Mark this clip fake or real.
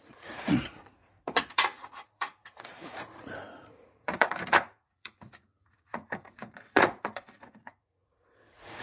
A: fake